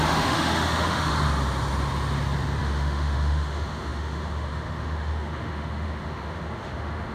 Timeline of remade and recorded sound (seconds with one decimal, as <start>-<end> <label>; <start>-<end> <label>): 0.0-1.1 remade; 1.1-2.6 recorded; 2.6-7.1 remade